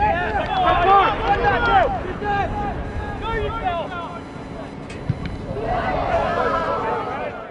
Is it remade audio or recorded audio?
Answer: recorded